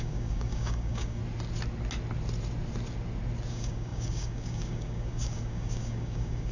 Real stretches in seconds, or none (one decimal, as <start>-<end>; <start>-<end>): 1.2-3.5